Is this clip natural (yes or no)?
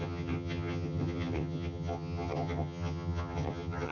no